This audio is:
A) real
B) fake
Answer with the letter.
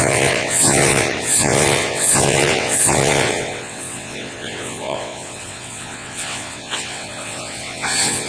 B